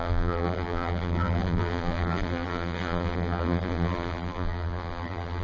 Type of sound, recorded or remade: remade